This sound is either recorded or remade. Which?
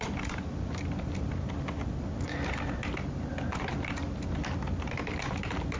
recorded